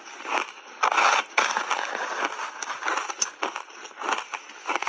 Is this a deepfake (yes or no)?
no